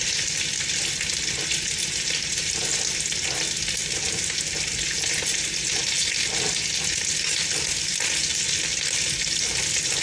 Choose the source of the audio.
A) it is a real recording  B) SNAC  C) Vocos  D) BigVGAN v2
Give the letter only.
A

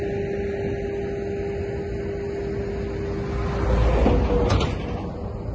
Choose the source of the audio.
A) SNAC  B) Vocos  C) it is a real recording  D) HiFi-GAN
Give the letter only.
C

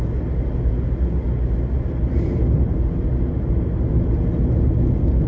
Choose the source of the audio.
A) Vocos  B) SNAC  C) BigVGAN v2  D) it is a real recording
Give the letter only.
D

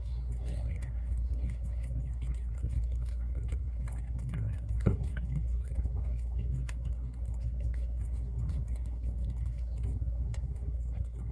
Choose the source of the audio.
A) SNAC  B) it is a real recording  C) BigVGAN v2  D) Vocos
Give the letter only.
A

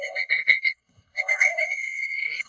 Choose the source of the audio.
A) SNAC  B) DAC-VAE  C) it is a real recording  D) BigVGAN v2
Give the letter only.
A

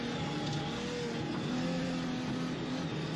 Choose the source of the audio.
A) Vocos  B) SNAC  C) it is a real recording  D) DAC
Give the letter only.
C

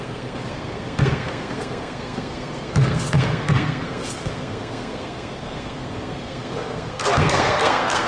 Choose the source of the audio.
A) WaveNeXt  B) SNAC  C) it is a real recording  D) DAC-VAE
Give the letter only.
B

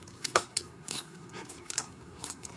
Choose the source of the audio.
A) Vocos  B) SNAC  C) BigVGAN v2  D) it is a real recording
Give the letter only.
B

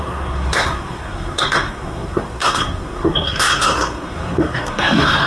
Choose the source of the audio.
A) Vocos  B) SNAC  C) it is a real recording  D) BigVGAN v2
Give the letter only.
B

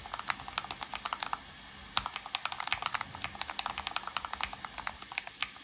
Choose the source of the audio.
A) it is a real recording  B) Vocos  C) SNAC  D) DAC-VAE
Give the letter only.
A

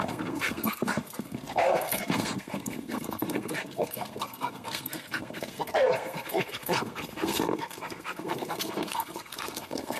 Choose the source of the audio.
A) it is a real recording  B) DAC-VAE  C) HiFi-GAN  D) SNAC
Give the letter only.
D